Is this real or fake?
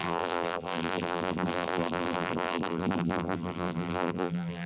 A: fake